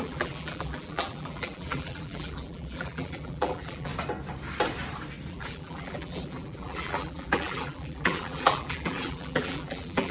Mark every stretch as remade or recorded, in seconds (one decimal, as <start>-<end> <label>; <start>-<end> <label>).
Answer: 0.0-3.9 remade; 3.9-5.3 recorded; 5.3-10.1 remade

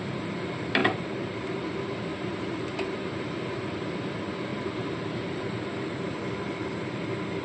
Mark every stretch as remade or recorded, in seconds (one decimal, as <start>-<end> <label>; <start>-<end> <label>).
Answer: 0.0-0.8 recorded; 0.8-1.4 remade; 1.4-2.1 recorded; 2.1-3.3 remade; 3.3-4.5 recorded; 4.5-5.4 remade; 5.4-7.4 recorded

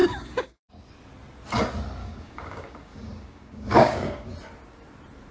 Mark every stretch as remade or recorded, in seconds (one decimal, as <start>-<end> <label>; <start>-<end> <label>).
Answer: 0.0-0.7 remade; 0.7-2.0 recorded; 2.0-4.3 remade; 4.3-5.3 recorded

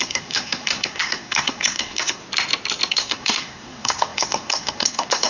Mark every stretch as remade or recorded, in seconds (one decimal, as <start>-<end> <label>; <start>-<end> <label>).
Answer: 0.0-2.2 remade; 2.2-2.9 recorded; 2.9-5.3 remade

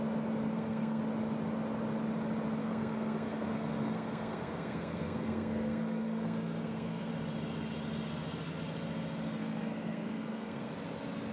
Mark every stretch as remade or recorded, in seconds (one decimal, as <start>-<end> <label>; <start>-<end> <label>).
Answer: 0.0-0.5 recorded; 0.5-1.0 remade; 1.0-2.6 recorded; 2.6-7.1 remade; 7.1-9.4 recorded; 9.4-10.7 remade; 10.7-11.3 recorded

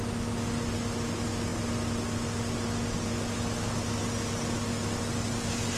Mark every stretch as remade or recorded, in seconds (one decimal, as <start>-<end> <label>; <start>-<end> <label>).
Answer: 0.0-5.8 recorded